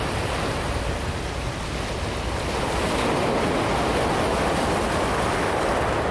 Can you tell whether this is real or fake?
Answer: real